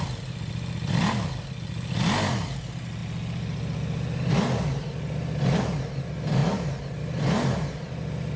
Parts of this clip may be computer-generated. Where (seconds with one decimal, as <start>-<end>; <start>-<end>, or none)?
6.4-7.0